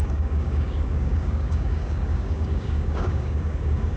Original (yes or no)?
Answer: no